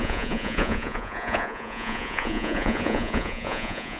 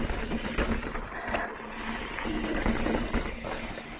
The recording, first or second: second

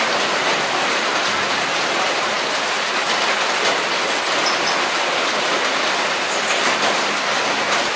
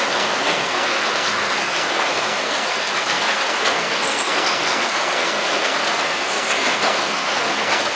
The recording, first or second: first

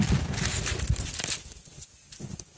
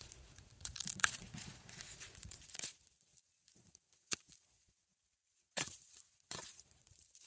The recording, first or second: first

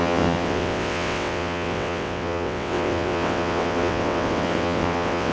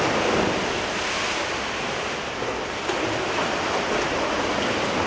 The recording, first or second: second